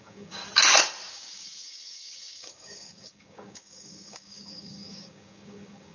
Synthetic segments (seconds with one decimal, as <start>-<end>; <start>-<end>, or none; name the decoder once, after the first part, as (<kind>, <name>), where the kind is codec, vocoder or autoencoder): 0.0-0.4 (codec, DAC); 1.1-5.9